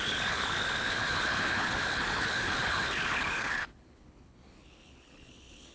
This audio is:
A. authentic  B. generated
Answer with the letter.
B